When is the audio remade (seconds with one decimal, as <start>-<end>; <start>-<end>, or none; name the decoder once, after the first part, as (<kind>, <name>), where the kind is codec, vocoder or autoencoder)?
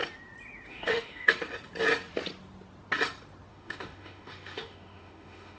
0.7-1.3 (autoencoder, DAC-VAE); 3.5-5.6